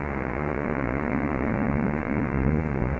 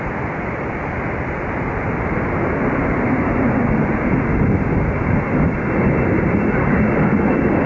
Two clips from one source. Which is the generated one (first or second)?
first